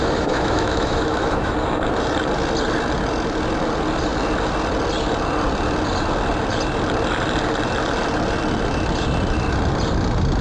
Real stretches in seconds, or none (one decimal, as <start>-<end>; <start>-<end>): 1.5-10.4